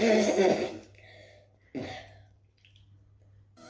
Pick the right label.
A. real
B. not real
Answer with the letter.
A